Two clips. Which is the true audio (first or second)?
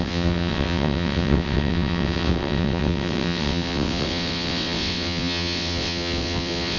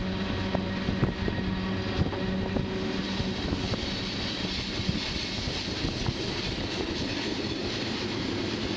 second